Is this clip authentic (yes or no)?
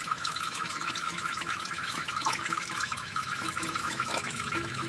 no